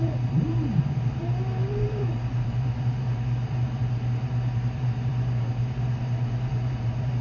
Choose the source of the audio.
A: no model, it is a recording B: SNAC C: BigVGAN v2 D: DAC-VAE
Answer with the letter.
C